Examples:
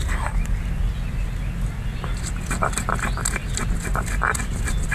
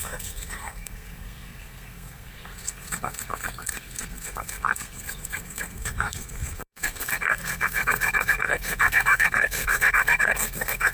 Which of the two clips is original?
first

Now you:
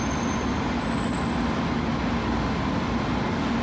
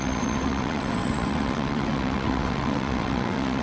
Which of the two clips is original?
first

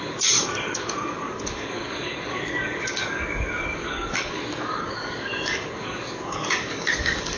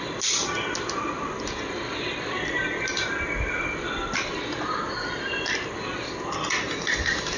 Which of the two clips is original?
second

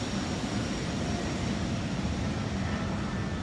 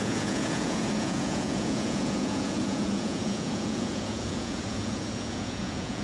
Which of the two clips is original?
first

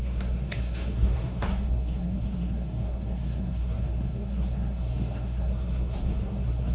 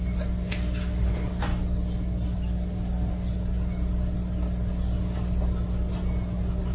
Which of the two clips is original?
second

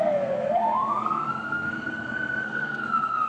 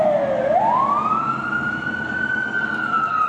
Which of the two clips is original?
second